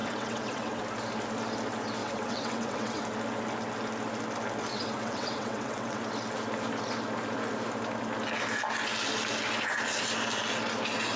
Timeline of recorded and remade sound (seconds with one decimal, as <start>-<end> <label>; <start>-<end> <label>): 0.0-0.8 remade; 0.8-2.0 recorded; 2.0-3.0 remade; 3.0-4.7 recorded; 4.7-6.0 remade; 6.0-11.2 recorded